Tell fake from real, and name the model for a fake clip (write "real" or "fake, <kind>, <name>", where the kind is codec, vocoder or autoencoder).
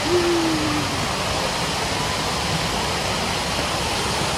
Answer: real